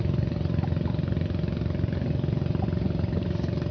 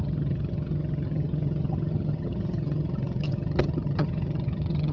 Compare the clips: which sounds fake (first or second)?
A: second